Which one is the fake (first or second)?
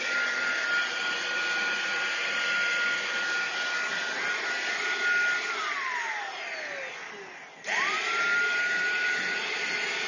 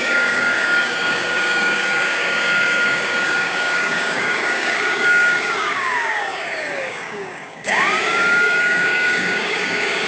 second